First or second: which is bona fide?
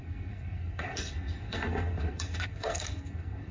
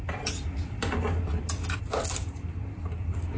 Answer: second